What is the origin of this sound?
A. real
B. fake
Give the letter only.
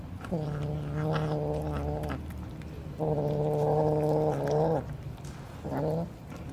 B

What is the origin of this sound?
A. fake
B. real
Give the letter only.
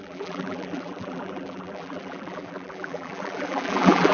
A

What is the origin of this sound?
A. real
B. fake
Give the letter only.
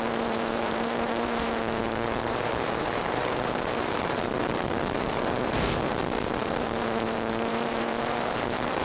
B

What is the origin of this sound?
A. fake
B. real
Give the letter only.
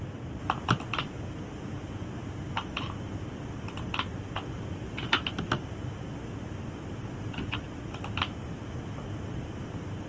B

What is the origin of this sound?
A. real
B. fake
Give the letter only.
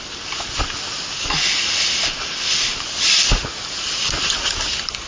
A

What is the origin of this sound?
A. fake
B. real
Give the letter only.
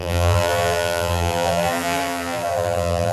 A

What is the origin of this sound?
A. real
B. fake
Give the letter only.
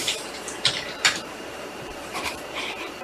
B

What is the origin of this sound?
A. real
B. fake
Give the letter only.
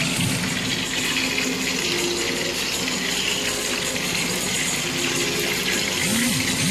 A